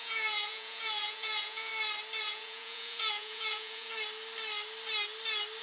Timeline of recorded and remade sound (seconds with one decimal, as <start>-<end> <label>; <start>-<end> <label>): 0.0-1.7 remade; 1.7-2.2 recorded; 2.2-3.9 remade; 3.9-5.6 recorded

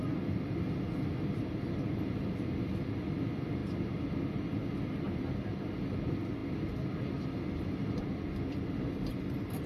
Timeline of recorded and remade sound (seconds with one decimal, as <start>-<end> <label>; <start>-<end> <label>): 0.0-9.7 recorded

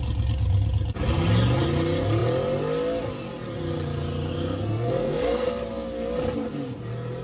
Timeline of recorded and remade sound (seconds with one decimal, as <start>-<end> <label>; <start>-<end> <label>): 0.0-4.3 recorded; 4.3-5.5 remade; 5.5-7.2 recorded